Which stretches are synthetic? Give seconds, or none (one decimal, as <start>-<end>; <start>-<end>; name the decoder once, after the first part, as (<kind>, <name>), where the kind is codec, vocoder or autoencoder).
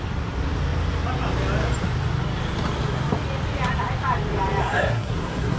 4.6-5.6 (codec, SNAC)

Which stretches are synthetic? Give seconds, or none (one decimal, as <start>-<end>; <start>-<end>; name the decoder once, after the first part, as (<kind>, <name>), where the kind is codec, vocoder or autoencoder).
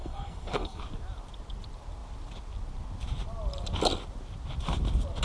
0.0-0.8 (codec, SNAC)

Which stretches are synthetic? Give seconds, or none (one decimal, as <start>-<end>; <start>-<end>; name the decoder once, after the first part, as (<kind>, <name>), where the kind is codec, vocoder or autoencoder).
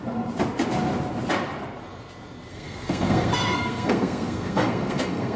2.5-5.4 (codec, SNAC)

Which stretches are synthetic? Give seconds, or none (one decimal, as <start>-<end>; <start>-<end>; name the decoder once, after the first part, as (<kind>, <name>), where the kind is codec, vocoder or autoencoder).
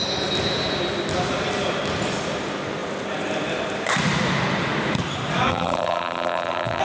5.5-6.8 (vocoder, BigVGAN v2)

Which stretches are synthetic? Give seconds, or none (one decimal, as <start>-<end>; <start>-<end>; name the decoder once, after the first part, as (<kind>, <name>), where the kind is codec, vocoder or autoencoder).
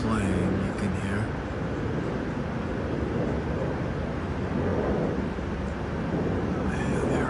none